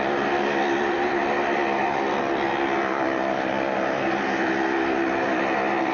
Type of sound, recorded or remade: remade